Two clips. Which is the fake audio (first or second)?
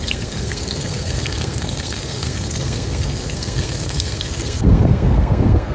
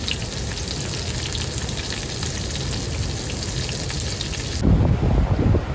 first